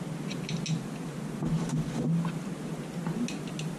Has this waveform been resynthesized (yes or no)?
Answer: no